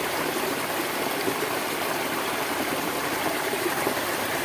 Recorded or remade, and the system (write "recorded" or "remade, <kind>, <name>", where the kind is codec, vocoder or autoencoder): remade, vocoder, BigVGAN v2